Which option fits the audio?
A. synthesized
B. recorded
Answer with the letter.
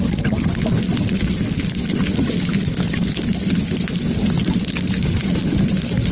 A